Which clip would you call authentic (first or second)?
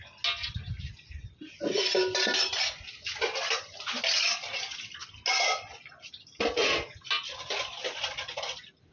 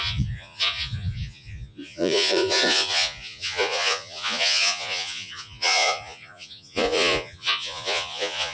first